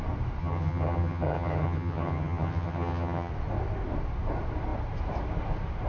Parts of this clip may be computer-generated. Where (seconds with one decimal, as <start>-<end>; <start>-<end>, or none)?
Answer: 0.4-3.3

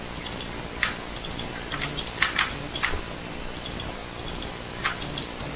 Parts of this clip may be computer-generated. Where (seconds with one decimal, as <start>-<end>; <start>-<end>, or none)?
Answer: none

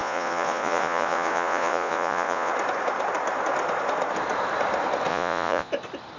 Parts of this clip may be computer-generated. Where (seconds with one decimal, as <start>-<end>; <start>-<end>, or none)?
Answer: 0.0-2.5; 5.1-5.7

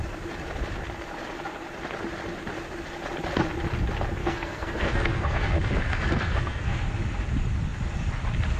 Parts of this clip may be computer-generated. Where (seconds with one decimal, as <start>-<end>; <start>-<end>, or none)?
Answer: 4.2-6.8